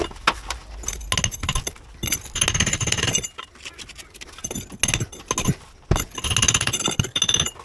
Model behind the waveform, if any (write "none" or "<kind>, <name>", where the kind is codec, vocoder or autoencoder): none